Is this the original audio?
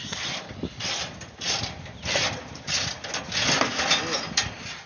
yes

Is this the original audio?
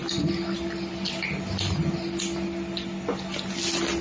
yes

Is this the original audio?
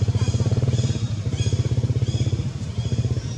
no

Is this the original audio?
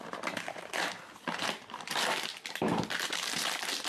yes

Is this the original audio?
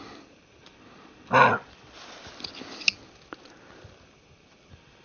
yes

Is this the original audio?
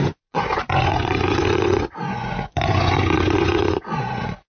no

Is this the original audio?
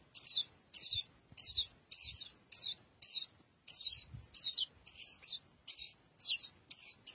yes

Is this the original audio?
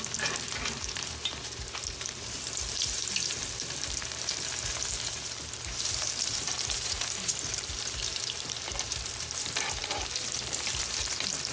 no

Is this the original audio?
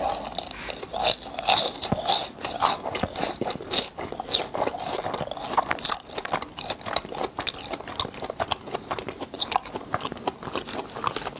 yes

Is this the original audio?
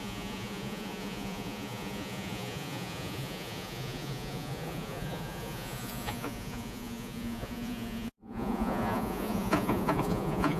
no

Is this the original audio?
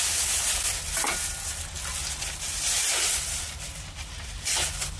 yes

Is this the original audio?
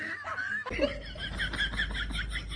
yes